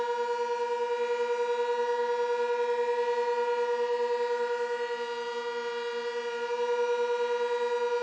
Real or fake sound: real